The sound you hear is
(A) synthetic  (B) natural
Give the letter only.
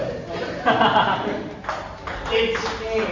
B